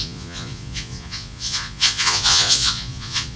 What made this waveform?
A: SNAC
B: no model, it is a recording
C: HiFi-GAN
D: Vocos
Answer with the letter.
D